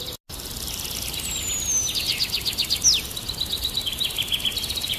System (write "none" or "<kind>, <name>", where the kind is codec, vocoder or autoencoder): none